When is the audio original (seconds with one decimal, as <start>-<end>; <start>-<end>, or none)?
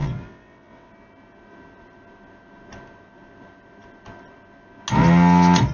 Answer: 0.9-5.7